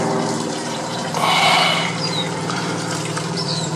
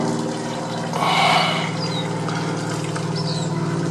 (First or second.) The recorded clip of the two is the second